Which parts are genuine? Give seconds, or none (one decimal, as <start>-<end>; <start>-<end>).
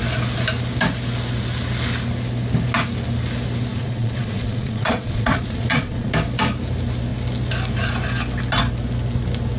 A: 0.0-3.7; 6.1-9.6